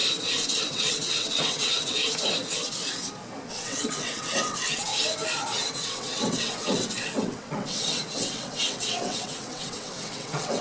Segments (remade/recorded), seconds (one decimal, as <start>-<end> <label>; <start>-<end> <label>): 0.0-0.6 recorded; 0.6-2.0 remade; 2.0-3.5 recorded; 3.5-4.9 remade; 4.9-5.7 recorded; 5.7-10.6 remade